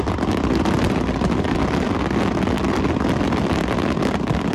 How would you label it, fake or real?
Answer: real